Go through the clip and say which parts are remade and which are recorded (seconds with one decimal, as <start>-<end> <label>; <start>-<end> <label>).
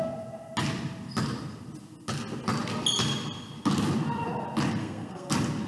0.0-4.8 recorded; 4.8-5.3 remade; 5.3-5.7 recorded